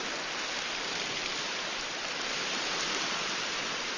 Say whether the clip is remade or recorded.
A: recorded